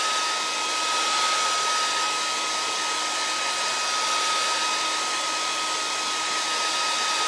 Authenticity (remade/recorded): recorded